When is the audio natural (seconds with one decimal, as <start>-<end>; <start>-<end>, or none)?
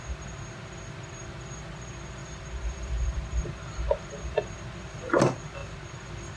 0.0-2.2; 3.4-6.4